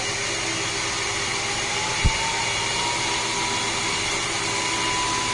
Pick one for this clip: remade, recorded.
recorded